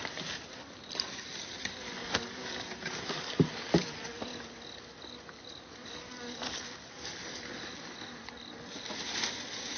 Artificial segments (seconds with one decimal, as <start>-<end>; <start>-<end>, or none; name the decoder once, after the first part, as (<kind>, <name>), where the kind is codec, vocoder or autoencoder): none